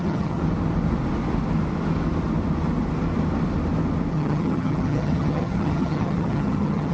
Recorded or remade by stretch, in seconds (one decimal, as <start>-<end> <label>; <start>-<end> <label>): 0.0-0.4 remade; 0.4-4.1 recorded; 4.1-6.9 remade